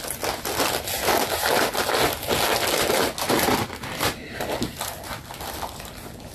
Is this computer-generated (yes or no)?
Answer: no